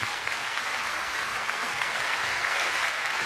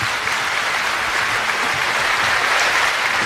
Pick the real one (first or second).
second